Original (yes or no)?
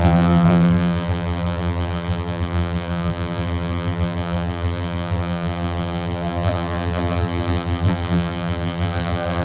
no